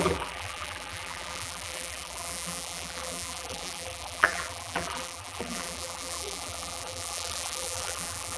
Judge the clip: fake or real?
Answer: fake